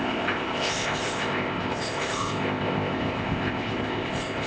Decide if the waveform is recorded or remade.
remade